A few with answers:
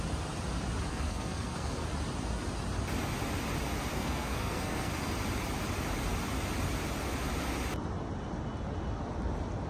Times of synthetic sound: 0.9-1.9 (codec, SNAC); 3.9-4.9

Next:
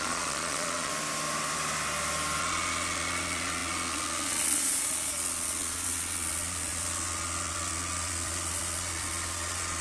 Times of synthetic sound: 0.0-0.9 (vocoder, Vocos); 2.4-9.8

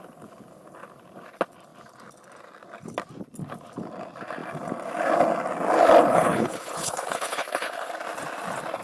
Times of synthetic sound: 6.1-7.9 (codec, HILCodec)

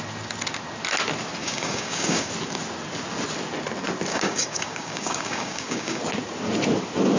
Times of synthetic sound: 1.4-2.3 (codec, DAC); 4.1-6.0

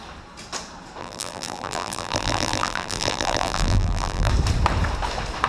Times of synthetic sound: 1.0-4.3 (vocoder, BigVGAN v2)